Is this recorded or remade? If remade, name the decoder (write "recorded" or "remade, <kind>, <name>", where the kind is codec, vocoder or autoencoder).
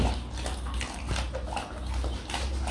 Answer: recorded